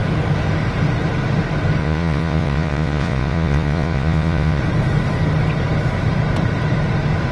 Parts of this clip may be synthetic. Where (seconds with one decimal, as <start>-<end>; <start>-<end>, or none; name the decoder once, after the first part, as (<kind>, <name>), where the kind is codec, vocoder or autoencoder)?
1.8-4.6 (vocoder, Vocos)